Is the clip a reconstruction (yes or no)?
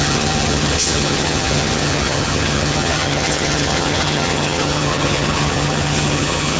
yes